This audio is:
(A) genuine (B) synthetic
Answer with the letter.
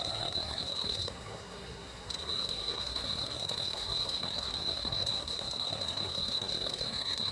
B